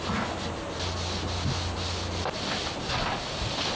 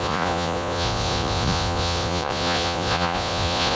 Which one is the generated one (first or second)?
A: second